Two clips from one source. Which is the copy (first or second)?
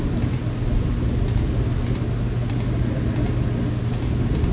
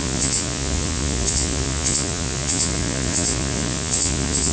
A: second